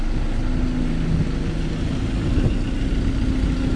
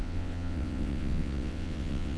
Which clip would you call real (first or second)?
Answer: first